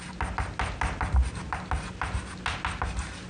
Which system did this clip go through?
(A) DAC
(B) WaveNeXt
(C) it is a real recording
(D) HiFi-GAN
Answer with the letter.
C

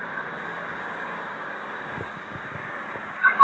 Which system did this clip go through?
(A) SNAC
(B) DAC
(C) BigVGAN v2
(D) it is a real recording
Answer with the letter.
B